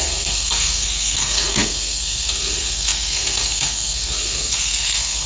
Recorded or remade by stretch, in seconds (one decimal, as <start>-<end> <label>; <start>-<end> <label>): 0.0-5.3 remade